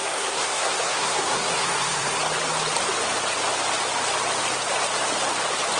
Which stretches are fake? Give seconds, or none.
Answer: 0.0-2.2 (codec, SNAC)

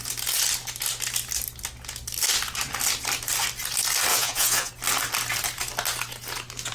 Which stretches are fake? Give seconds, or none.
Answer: 4.1-4.7 (vocoder, Vocos)

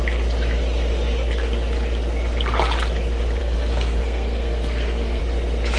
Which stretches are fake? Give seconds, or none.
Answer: 3.4-5.2 (codec, SNAC)

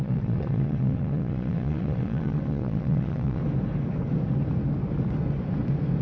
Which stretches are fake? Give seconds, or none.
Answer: 0.0-3.4 (vocoder, Vocos)

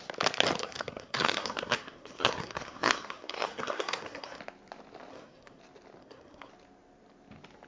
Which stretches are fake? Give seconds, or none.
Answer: 0.6-4.4 (codec, SNAC); 5.1-5.6; 6.0-6.5

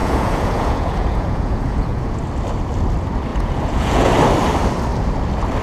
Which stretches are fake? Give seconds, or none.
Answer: 0.0-2.2 (vocoder, Vocos); 3.3-4.1